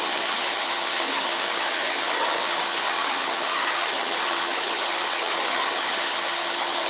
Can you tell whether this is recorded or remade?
remade